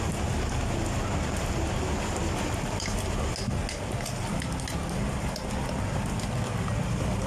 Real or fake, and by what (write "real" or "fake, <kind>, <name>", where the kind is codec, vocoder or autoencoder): real